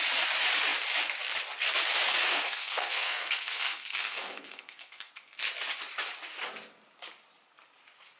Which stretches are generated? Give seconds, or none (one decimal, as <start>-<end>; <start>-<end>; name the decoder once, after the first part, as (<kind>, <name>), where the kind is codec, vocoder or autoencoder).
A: 2.3-5.1 (codec, SNAC)